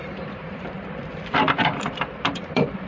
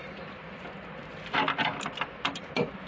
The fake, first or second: first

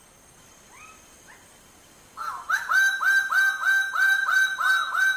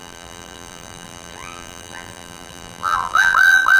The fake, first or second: second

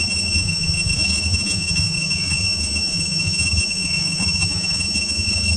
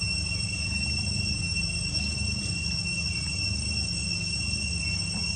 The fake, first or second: first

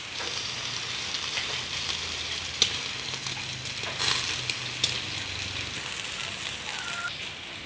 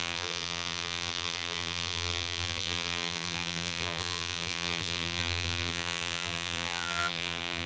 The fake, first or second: second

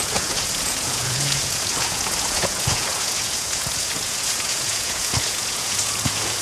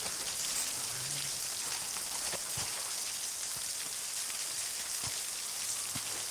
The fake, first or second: first